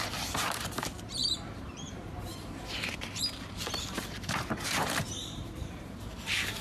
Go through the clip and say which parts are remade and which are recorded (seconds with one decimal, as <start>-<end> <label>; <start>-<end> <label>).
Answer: 0.0-6.6 remade